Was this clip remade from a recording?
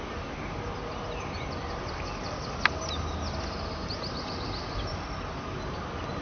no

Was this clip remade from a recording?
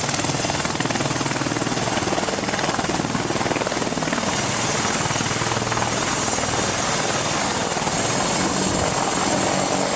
no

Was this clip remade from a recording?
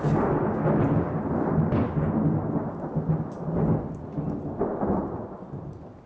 no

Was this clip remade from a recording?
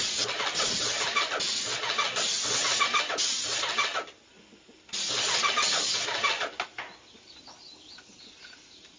no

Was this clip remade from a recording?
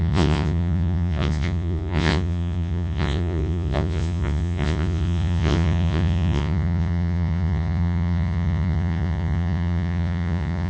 yes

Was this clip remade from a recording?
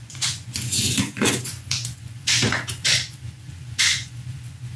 yes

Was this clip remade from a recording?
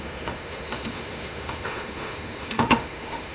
yes